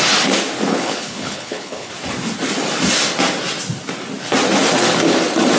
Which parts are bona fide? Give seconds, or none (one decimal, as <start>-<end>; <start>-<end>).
0.0-0.7; 1.9-5.6